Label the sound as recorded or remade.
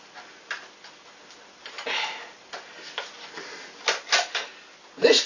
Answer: recorded